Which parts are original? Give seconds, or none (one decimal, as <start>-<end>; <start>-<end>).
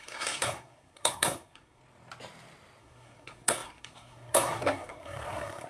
1.8-2.8